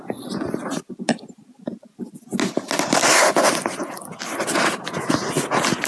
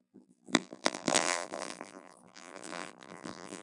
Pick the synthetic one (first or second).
second